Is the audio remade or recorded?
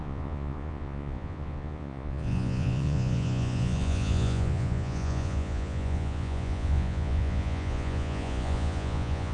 remade